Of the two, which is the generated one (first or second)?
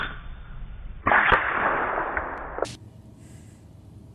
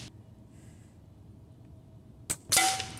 first